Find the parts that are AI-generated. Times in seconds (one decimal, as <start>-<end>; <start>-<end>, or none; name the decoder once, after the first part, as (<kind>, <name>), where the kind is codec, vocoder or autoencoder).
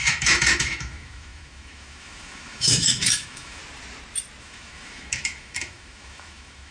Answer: 0.0-3.6 (autoencoder, DAC-VAE); 4.4-6.7